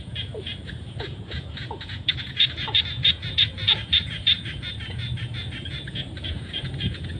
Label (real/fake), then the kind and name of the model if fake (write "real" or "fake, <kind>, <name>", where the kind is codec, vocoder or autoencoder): fake, vocoder, Vocos